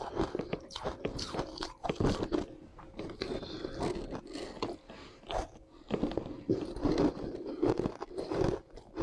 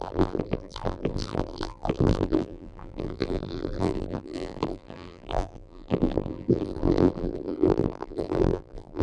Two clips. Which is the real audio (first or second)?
first